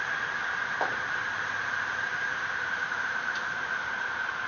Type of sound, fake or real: fake